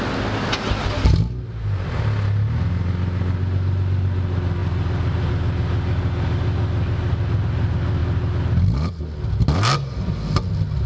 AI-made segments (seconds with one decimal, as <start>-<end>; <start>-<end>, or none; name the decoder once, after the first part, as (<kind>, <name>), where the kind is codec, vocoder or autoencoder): none